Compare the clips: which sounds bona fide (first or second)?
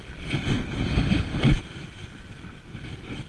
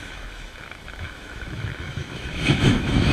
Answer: first